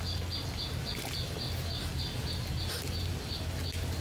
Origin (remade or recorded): recorded